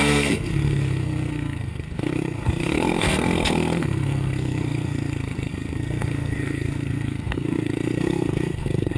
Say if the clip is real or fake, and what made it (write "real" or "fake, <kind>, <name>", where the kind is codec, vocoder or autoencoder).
fake, codec, SNAC